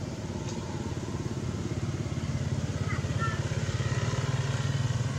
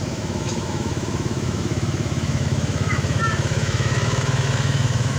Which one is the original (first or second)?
first